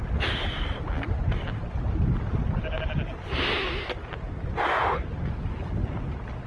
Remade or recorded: recorded